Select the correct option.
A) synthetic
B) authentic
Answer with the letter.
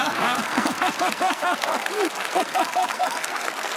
A